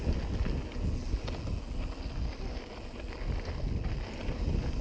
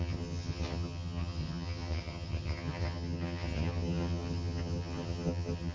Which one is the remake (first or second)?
second